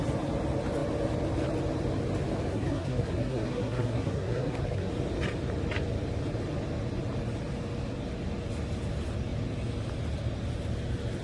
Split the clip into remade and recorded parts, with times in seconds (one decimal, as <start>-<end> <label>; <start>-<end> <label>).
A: 0.0-2.5 recorded; 2.5-4.9 remade; 4.9-11.2 recorded